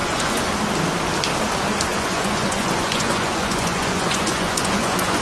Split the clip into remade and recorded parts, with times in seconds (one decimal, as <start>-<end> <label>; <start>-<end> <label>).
0.0-0.5 remade; 0.5-1.9 recorded; 1.9-5.2 remade